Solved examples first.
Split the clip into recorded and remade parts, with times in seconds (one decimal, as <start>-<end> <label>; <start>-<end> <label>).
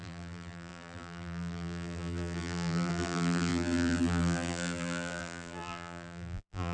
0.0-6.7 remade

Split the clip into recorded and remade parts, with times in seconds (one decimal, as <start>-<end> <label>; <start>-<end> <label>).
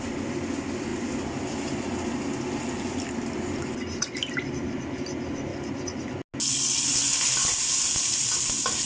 0.0-8.9 recorded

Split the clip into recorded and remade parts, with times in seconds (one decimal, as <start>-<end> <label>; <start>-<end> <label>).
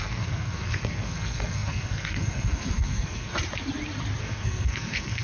0.0-3.3 remade; 3.3-4.2 recorded; 4.2-5.2 remade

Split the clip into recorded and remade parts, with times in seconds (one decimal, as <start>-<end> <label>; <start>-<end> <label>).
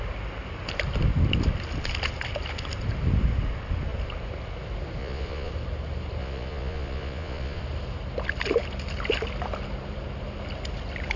0.0-5.0 recorded; 5.0-5.5 remade; 5.5-6.2 recorded; 6.2-7.6 remade; 7.6-11.2 recorded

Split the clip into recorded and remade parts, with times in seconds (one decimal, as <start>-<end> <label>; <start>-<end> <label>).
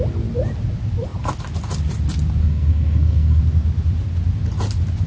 0.0-2.4 recorded; 2.4-3.4 remade; 3.4-5.1 recorded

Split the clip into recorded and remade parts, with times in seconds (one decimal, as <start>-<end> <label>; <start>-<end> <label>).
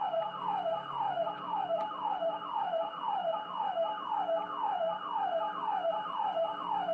0.0-1.2 recorded; 1.2-2.3 remade; 2.3-6.9 recorded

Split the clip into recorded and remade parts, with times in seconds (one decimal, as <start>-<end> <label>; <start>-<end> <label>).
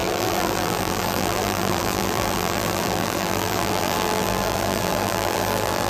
0.0-5.9 remade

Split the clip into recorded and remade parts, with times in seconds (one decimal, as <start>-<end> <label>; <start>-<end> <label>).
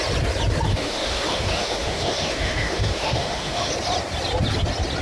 0.0-0.7 recorded; 0.7-3.7 remade; 3.7-5.0 recorded